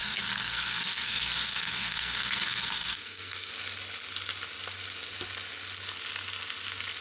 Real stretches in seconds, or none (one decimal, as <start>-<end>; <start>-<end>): 3.5-7.0